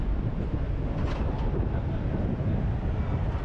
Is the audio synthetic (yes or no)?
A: no